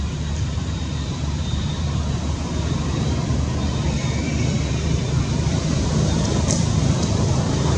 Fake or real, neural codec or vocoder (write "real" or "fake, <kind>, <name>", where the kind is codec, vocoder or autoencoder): fake, vocoder, BigVGAN v2